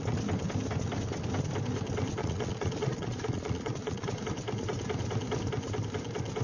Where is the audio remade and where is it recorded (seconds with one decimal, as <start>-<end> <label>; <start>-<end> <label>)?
0.0-2.2 recorded; 2.2-4.2 remade; 4.2-6.4 recorded